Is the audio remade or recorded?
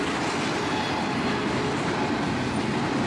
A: recorded